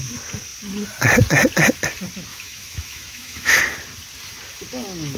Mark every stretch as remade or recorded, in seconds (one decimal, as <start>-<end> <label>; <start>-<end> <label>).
0.0-2.3 recorded; 2.3-3.6 remade; 3.6-5.2 recorded